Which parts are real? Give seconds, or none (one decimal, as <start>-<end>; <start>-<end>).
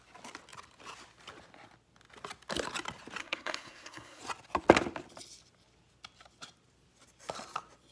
0.0-3.2; 4.2-7.9